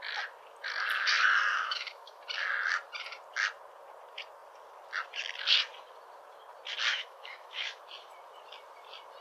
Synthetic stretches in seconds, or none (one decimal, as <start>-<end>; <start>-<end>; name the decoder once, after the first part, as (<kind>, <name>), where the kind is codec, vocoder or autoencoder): 1.5-2.2 (autoencoder, DAC-VAE); 6.9-7.8